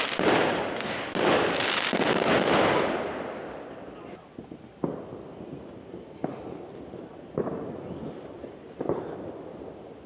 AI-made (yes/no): no